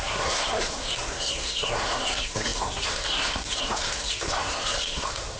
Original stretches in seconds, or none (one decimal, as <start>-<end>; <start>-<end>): none